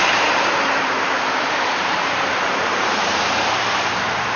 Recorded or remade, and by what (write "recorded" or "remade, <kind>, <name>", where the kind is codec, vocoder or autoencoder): remade, vocoder, BigVGAN v2